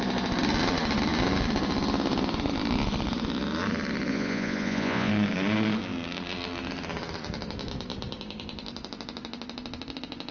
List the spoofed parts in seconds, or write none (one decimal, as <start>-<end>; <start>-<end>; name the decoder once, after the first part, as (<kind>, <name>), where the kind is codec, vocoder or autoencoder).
4.1-5.1 (vocoder, Vocos)